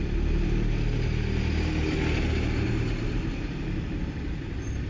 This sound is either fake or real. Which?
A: real